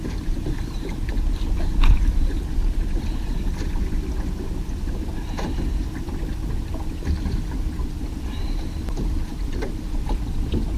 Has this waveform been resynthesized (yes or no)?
no